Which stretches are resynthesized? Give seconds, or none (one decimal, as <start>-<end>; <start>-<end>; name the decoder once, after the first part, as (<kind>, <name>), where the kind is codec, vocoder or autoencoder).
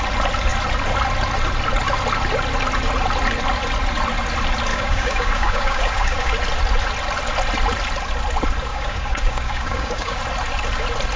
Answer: 4.7-6.3 (codec, DAC); 8.7-10.2